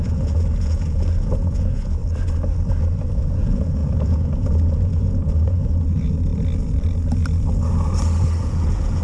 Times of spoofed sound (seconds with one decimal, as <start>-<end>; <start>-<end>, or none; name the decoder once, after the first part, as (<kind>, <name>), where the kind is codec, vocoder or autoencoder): 0.0-2.0 (vocoder, Vocos); 3.1-6.3; 8.4-9.0